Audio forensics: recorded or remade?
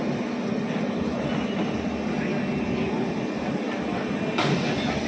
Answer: recorded